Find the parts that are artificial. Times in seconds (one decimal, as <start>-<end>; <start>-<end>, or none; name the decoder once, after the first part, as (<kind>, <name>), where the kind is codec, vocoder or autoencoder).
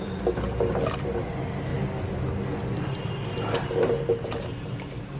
none